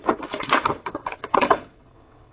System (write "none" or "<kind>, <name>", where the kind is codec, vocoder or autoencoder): vocoder, WaveNeXt